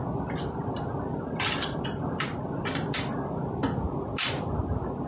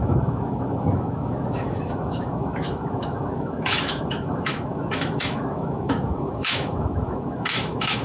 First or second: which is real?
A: first